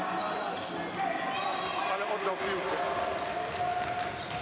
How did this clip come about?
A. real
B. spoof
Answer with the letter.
A